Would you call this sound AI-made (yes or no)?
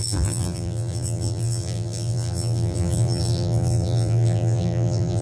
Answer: yes